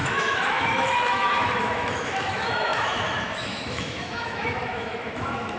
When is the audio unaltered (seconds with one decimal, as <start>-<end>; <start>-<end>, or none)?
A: none